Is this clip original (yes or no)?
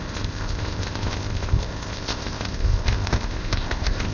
no